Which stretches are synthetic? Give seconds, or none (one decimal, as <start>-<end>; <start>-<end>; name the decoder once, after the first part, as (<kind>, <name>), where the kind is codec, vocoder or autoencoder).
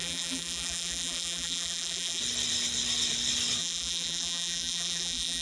0.0-2.2 (vocoder, BigVGAN v2); 3.6-5.4